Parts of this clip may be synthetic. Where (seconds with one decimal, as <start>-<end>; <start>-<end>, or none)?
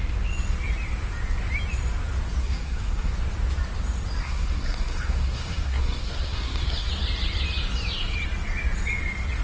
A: 2.4-3.1; 4.2-6.9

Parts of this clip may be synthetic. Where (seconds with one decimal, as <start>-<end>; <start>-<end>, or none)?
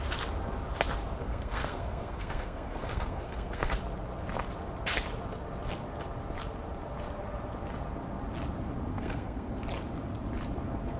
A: 1.2-3.8; 8.9-9.5